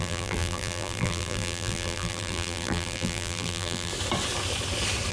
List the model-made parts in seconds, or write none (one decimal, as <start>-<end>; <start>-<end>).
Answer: 0.0-3.9